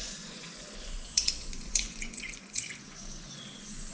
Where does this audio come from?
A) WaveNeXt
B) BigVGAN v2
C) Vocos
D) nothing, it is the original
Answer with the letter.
C